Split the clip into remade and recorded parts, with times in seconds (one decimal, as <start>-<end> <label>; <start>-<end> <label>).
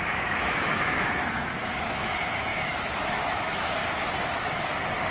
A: 0.0-3.8 remade; 3.8-5.1 recorded